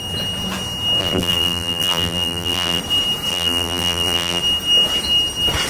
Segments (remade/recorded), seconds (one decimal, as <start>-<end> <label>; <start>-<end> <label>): 0.0-1.0 recorded; 1.0-2.8 remade; 2.8-3.3 recorded; 3.3-4.4 remade; 4.4-5.7 recorded